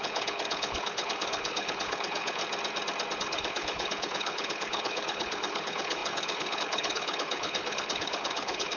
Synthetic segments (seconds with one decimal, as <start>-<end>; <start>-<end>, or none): 0.0-2.4; 3.2-8.8